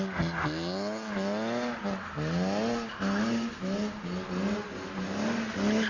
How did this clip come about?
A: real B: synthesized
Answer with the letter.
A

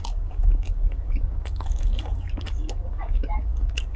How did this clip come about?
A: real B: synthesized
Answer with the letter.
B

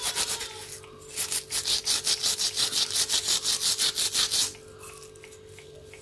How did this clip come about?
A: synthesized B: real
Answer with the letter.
B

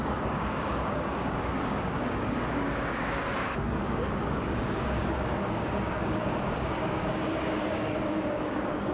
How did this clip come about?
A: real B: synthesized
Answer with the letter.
B